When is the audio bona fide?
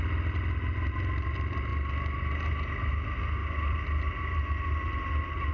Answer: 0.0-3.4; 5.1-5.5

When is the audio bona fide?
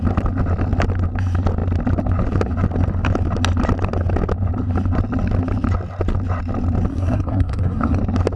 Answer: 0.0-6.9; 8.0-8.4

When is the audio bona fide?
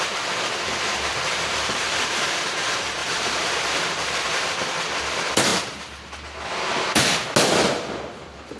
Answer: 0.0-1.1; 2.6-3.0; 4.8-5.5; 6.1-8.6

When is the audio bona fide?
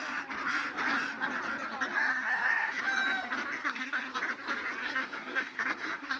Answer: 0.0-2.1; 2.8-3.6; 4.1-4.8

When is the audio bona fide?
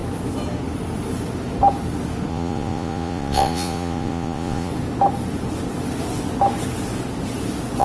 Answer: 0.0-2.3; 4.7-7.8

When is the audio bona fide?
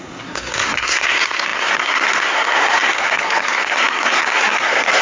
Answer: none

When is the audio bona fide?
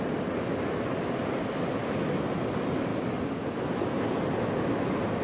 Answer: 0.0-1.8; 2.3-5.2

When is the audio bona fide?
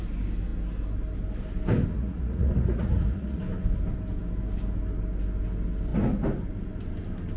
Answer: 0.0-1.9; 3.4-7.4